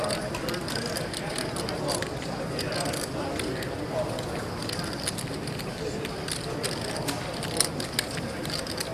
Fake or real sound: real